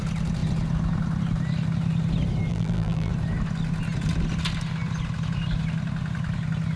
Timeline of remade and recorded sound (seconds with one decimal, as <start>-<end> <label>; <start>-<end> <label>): 0.0-2.5 recorded; 2.5-3.1 remade; 3.1-6.8 recorded